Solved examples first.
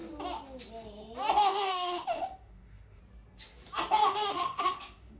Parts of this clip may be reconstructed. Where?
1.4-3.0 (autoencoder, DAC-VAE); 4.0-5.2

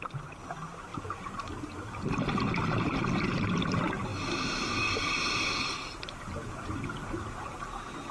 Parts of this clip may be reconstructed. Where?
none

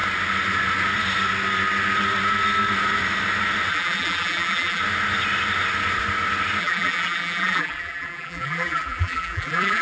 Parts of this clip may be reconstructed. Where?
3.7-4.8 (vocoder, BigVGAN v2); 6.6-9.8

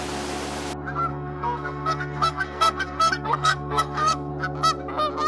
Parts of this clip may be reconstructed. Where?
1.1-4.3 (codec, SNAC)

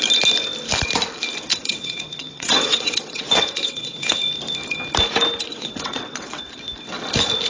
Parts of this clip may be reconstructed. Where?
1.5-4.2 (vocoder, WaveNeXt); 5.5-6.4

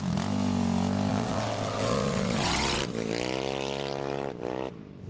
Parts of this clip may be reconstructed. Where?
1.1-2.8 (vocoder, WaveNeXt)

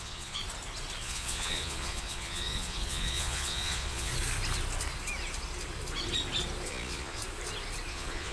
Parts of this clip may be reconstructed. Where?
0.0-0.4 (vocoder, Vocos); 1.0-4.1; 6.7-7.2; 7.9-8.3

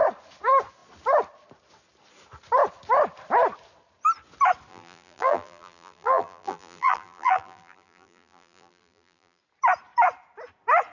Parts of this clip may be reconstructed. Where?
4.7-9.4 (vocoder, BigVGAN v2)